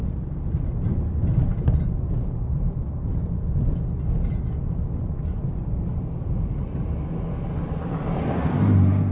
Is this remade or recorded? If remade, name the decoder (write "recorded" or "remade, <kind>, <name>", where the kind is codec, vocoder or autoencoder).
recorded